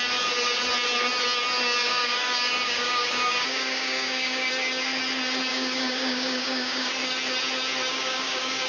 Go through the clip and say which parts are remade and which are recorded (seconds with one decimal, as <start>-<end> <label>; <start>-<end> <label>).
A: 0.0-1.8 recorded; 1.8-4.5 remade; 4.5-5.5 recorded; 5.5-6.9 remade; 6.9-7.9 recorded; 7.9-8.7 remade